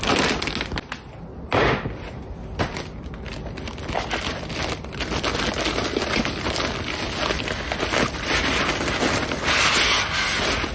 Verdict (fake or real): real